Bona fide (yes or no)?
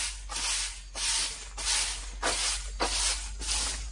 yes